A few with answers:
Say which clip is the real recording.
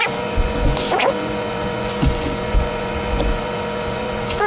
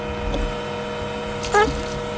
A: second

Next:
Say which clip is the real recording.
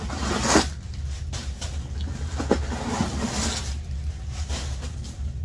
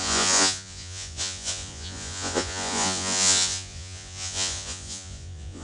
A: first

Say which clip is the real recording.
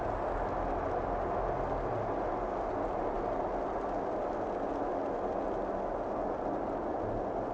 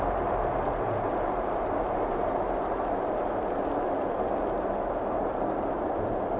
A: first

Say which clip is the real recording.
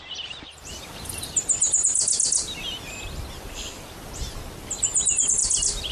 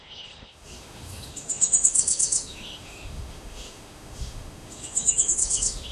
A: first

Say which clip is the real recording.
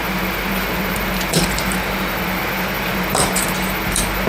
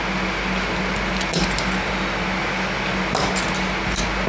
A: second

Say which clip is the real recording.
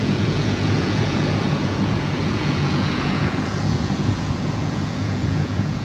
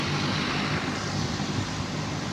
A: second